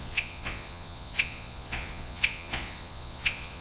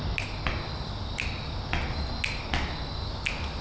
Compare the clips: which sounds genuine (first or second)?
second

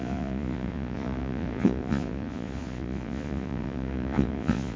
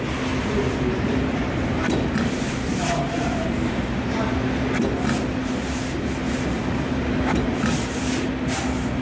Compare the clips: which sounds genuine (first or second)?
second